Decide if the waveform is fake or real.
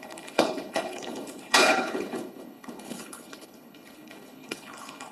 fake